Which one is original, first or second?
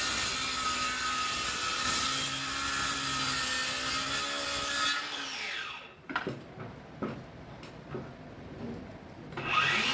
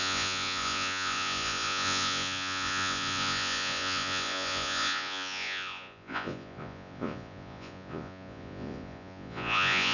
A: first